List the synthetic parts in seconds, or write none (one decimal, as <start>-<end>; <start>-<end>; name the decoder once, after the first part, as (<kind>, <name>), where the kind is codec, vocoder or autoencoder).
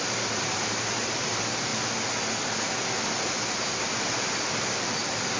0.0-1.7 (vocoder, BigVGAN v2); 4.4-5.4